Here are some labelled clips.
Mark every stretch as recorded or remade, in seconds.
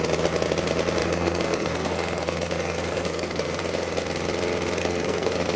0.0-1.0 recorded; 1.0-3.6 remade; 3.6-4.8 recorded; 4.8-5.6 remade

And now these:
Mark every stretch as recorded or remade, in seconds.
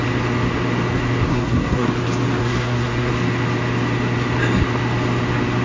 0.0-1.3 recorded; 1.3-1.9 remade; 1.9-2.4 recorded; 2.4-3.1 remade; 3.1-5.6 recorded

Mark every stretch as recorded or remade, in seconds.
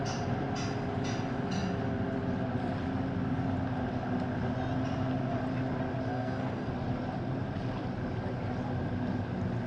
0.0-6.1 recorded; 6.1-6.7 remade; 6.7-9.7 recorded